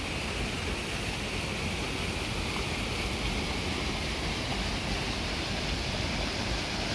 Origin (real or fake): real